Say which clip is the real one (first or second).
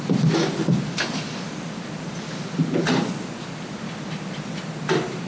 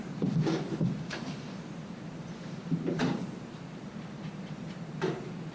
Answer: first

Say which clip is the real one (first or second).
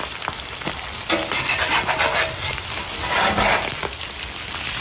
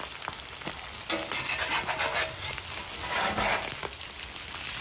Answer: second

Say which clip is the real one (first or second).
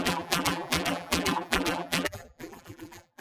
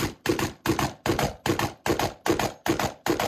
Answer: second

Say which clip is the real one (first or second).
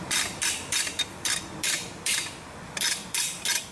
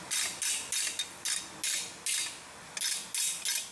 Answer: second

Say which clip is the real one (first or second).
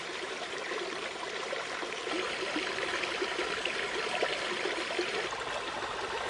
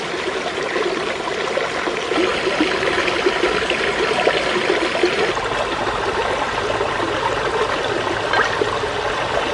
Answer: second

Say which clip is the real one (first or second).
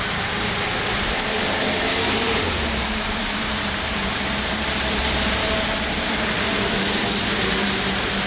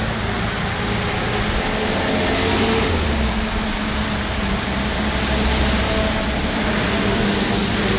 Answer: second